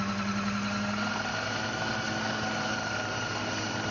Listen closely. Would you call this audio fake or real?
real